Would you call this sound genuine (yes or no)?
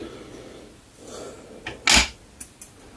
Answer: yes